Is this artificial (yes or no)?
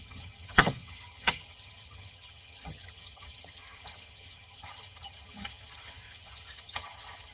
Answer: yes